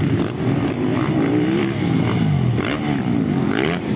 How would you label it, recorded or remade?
recorded